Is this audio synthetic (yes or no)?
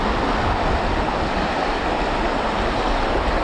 no